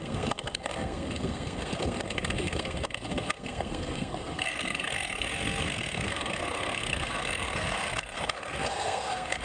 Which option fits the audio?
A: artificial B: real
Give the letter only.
A